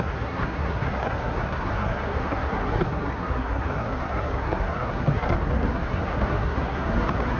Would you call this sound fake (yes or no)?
yes